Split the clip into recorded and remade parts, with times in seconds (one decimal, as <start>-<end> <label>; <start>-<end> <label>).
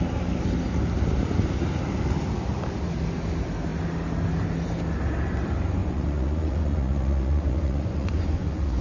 0.0-5.8 recorded; 5.8-8.8 remade